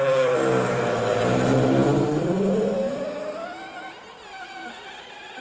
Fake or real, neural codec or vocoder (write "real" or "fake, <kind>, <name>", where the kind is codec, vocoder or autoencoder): real